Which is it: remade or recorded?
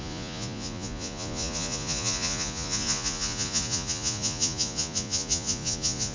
remade